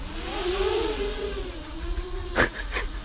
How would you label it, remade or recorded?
remade